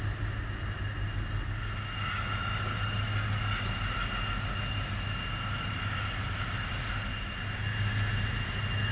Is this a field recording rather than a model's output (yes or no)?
yes